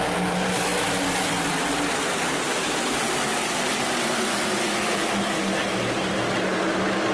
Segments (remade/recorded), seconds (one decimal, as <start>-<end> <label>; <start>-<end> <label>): 0.0-7.1 recorded